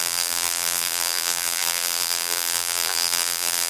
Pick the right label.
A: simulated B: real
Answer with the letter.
A